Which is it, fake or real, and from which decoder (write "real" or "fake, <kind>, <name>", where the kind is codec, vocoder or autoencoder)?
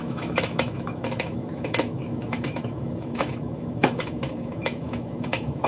fake, autoencoder, DAC-VAE